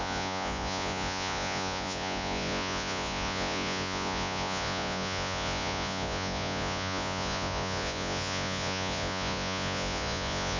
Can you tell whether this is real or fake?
fake